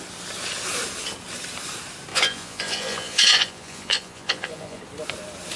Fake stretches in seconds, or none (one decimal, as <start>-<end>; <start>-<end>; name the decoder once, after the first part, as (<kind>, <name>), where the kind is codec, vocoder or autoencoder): 2.1-4.8 (vocoder, Vocos)